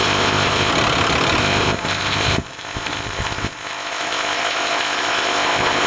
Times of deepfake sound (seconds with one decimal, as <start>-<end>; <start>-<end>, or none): 0.0-0.7; 1.4-5.9